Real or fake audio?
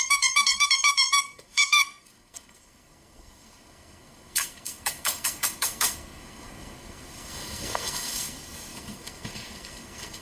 fake